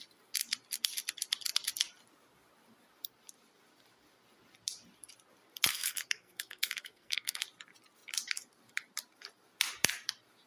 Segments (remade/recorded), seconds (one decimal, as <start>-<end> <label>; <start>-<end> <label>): 0.0-5.7 recorded; 5.7-7.4 remade; 7.4-10.5 recorded